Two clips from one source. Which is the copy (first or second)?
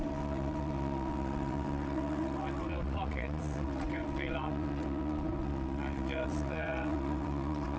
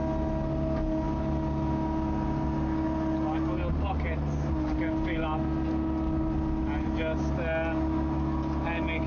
first